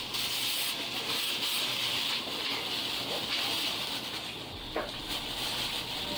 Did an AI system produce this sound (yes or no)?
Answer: no